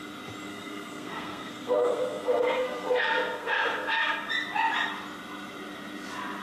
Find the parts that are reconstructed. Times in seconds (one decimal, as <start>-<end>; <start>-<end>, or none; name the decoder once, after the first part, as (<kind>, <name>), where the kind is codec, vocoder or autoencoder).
0.5-4.3 (codec, SNAC)